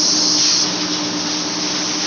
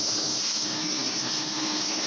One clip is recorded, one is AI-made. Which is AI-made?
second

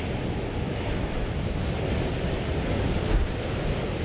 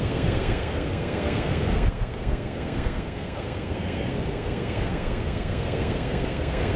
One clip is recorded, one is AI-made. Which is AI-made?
second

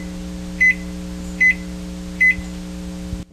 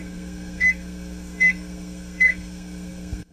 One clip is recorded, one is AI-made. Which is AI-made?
second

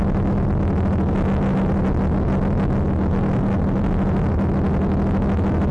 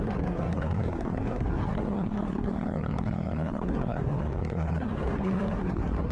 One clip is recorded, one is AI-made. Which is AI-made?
second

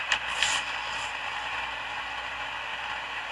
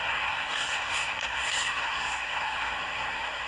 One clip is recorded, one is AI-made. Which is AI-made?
second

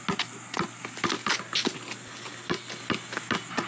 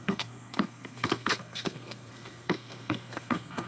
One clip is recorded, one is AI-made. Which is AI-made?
second